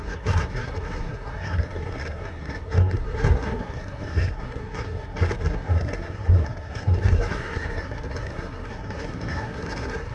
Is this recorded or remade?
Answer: remade